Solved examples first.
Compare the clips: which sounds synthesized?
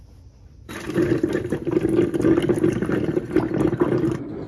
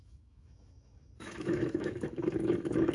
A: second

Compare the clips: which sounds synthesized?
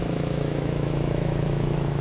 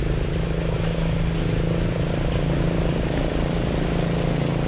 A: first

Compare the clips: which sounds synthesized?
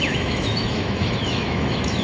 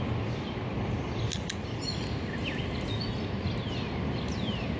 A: first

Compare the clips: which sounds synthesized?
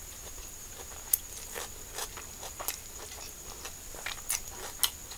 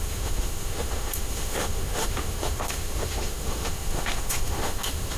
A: second